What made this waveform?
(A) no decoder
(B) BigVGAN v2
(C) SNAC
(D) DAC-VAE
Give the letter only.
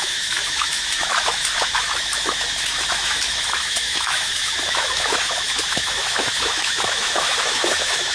D